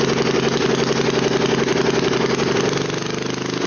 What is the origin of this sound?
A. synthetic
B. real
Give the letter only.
B